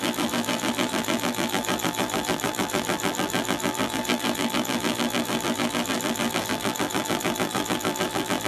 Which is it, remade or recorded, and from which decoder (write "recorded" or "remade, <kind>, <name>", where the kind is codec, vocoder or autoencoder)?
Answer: remade, vocoder, BigVGAN v2